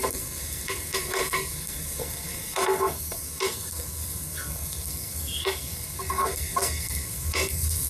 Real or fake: fake